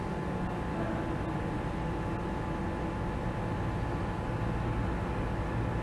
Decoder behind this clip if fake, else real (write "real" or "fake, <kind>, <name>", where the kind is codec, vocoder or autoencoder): real